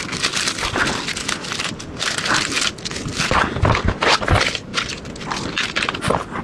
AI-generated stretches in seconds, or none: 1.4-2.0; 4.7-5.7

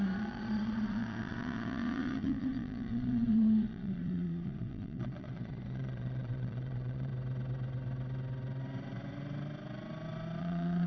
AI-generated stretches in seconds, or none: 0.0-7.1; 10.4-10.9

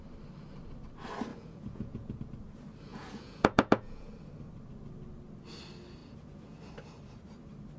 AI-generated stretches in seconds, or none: 1.3-2.2; 2.9-4.1; 6.0-6.6

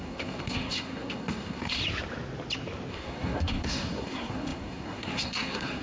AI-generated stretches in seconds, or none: 0.0-1.8; 2.9-5.8

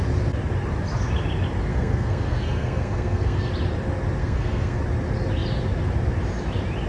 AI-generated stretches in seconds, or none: 1.7-3.5; 4.2-4.8

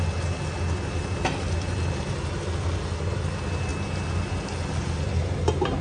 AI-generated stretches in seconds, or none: none

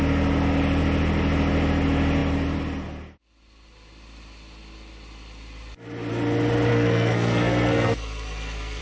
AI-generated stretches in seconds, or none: 6.7-8.8